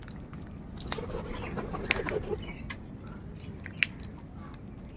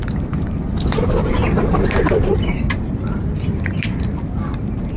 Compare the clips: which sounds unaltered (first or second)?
first